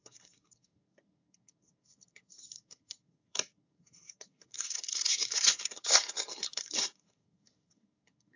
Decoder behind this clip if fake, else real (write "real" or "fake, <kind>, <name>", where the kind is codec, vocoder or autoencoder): fake, codec, SNAC